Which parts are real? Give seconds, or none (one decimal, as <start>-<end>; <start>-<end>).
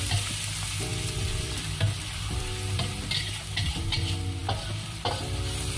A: 0.0-0.9; 2.8-4.4